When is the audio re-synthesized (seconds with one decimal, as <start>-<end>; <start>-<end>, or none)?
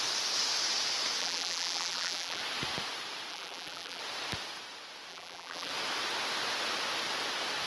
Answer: 1.2-2.4; 3.3-4.0; 5.1-5.7